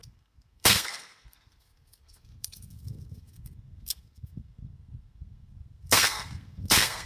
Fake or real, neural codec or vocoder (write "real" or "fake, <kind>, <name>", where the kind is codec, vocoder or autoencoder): fake, codec, SNAC